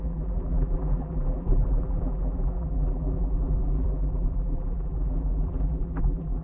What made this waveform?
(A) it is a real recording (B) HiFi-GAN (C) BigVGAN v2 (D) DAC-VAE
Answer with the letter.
C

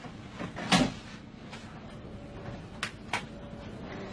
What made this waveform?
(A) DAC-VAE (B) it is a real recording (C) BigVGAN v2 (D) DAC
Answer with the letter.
B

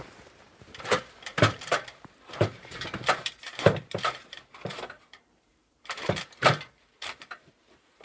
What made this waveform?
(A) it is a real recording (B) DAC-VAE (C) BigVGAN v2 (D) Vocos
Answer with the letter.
C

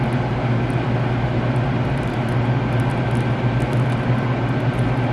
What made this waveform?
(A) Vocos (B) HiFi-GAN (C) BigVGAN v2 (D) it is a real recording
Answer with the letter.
D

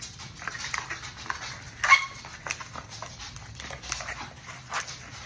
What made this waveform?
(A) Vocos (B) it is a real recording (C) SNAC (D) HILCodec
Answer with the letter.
B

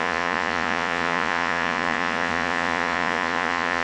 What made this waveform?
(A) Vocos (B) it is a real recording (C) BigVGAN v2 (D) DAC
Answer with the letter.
A